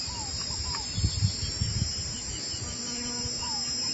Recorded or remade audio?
recorded